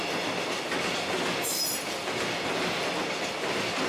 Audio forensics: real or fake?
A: real